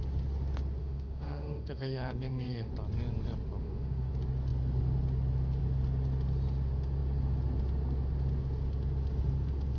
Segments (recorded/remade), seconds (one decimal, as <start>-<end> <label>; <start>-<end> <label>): 0.0-0.8 recorded; 0.8-2.7 remade; 2.7-3.6 recorded; 3.6-4.1 remade; 4.1-9.8 recorded